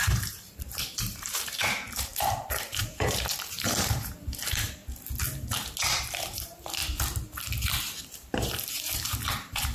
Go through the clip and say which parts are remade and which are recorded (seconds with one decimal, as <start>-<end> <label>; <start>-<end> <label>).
0.0-2.1 remade; 2.1-2.6 recorded; 2.6-4.8 remade; 4.8-6.0 recorded; 6.0-6.8 remade; 6.8-8.0 recorded; 8.0-9.7 remade